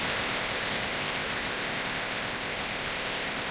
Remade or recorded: remade